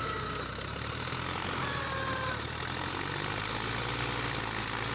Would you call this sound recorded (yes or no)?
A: yes